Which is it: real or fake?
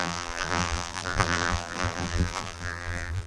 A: fake